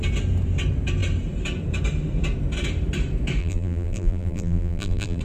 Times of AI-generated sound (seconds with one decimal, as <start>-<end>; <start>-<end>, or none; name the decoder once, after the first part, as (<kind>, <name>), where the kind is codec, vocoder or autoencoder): 3.4-5.2 (vocoder, BigVGAN v2)